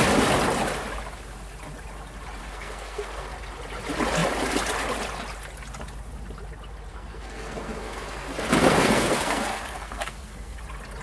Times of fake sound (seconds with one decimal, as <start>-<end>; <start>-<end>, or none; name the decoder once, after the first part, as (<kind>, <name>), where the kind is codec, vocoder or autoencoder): 2.4-3.4 (codec, SNAC); 6.9-10.6